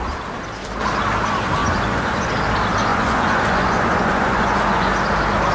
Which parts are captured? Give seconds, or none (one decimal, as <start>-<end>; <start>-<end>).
0.0-1.6; 2.3-2.9; 4.9-5.5